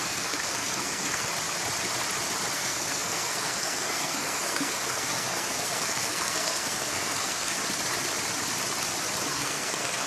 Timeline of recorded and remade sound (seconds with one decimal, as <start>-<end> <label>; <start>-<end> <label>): 0.0-1.3 remade; 1.3-2.5 recorded; 2.5-7.6 remade; 7.6-9.3 recorded; 9.3-10.1 remade